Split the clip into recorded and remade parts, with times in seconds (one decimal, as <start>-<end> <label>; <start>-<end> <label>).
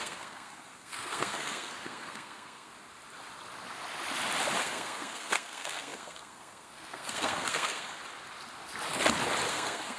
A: 0.0-2.7 remade; 2.7-4.6 recorded; 4.6-8.0 remade; 8.0-9.5 recorded; 9.5-10.0 remade